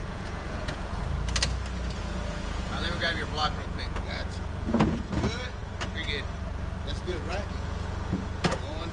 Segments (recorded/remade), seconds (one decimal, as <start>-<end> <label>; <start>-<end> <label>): 0.0-1.0 remade; 1.0-2.0 recorded; 2.0-5.6 remade; 5.6-7.0 recorded; 7.0-8.9 remade